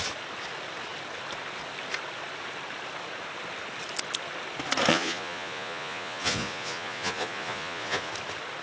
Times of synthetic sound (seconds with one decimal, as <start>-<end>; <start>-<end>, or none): 4.9-8.1